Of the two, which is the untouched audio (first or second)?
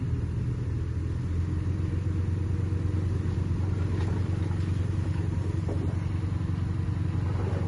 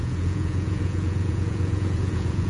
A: first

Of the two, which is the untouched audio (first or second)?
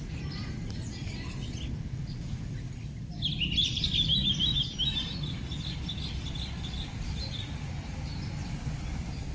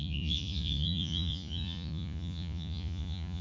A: first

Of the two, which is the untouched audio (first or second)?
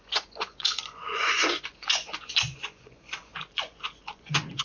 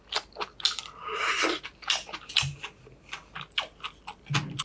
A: second